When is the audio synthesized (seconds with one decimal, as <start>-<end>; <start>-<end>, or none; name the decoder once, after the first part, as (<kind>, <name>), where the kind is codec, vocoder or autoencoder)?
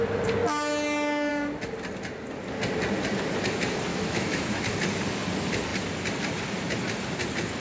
3.9-4.6 (autoencoder, DAC-VAE)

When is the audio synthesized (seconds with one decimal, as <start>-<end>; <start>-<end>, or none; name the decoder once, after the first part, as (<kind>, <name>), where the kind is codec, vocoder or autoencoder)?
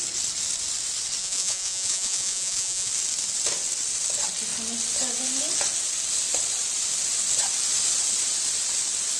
1.2-2.9 (vocoder, Vocos)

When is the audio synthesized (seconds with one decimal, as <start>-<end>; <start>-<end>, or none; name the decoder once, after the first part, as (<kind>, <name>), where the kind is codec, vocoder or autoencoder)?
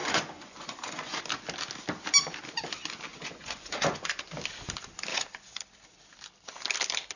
0.0-1.2 (vocoder, Vocos); 3.1-4.3; 5.1-5.6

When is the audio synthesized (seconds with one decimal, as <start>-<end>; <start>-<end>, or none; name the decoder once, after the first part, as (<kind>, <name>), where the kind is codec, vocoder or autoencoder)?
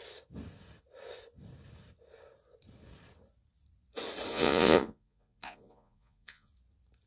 4.3-6.5 (vocoder, Vocos)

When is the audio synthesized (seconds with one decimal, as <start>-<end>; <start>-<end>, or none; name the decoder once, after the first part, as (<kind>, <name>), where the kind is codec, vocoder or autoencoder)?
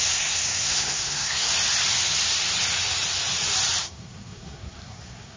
0.0-1.5 (codec, SNAC); 3.8-5.4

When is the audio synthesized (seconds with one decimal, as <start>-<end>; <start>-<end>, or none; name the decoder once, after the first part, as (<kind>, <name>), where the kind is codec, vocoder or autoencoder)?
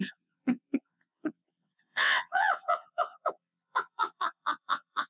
0.0-5.1 (vocoder, WaveNeXt)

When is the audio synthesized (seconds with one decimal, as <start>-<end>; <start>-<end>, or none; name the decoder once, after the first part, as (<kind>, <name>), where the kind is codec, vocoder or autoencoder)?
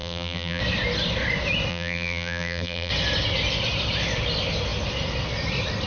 0.0-0.6 (vocoder, BigVGAN v2); 1.7-2.9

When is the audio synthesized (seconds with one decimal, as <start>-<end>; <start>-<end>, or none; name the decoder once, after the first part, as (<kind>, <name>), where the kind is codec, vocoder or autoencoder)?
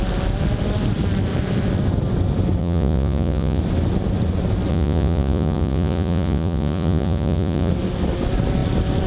2.6-3.6 (vocoder, Vocos); 4.7-7.7